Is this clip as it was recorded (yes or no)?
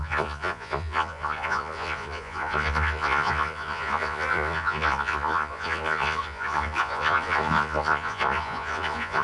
no